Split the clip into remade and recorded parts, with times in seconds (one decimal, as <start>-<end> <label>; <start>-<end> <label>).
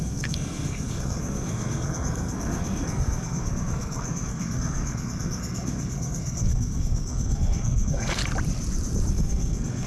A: 0.0-8.2 remade; 8.2-9.1 recorded; 9.1-9.9 remade